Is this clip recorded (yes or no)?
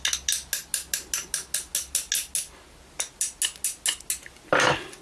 yes